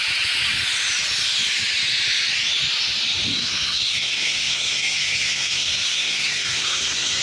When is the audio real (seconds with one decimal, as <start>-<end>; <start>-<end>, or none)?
0.0-3.3